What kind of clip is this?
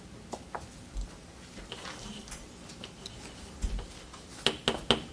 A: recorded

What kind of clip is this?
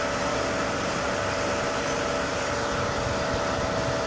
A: recorded